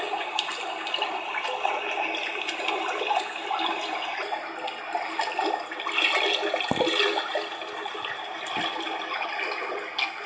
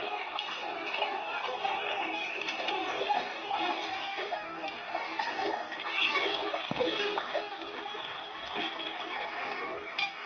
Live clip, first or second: first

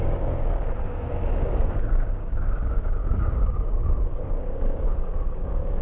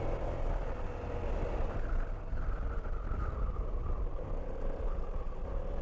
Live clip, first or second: second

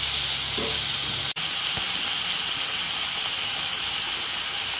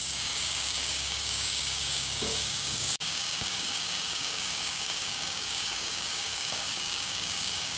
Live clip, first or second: first